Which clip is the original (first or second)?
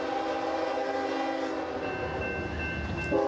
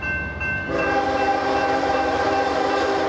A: first